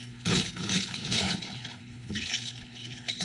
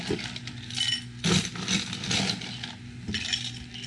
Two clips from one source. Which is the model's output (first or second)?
first